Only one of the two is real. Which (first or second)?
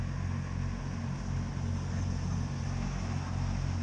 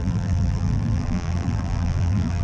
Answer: first